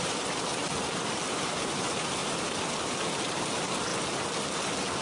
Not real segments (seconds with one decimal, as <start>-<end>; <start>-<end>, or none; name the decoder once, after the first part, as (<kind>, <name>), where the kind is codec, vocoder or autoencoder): 0.0-0.5 (vocoder, BigVGAN v2); 1.6-3.9